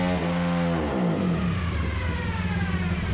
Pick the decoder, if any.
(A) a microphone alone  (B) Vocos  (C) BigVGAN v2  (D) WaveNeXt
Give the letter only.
A